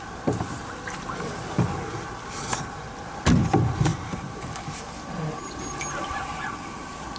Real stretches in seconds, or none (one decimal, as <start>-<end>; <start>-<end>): 0.0-7.2

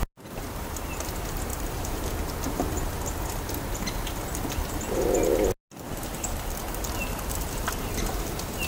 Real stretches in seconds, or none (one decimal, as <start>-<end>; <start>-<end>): 0.0-1.5; 2.1-8.7

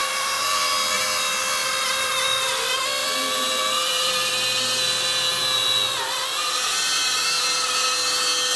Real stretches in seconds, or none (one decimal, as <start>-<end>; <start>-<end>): 1.0-1.6; 2.1-3.0; 4.3-8.6

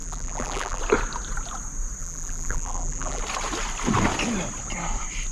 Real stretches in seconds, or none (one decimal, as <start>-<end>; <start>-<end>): 0.8-2.0; 3.2-5.3

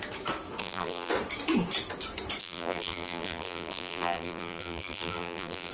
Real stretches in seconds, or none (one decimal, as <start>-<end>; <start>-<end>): 0.0-0.6; 1.1-2.4

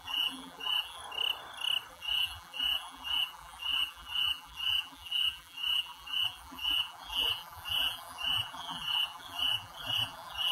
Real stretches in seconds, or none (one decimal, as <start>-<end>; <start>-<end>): 1.0-1.9

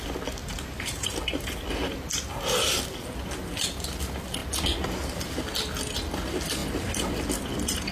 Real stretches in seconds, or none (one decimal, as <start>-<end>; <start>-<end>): 0.0-0.4; 1.7-7.9